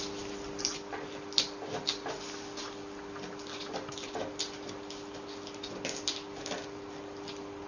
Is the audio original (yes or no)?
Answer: yes